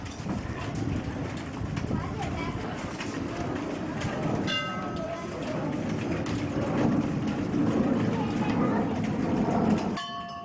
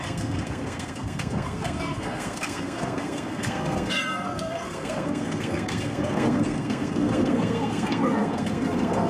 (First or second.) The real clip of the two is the first